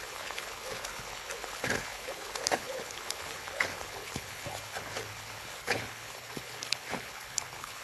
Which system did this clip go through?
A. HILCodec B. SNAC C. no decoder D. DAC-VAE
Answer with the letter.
A